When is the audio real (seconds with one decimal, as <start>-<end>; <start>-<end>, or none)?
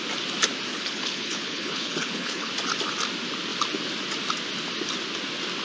0.0-0.7; 2.5-5.6